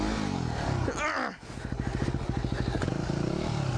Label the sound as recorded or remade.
recorded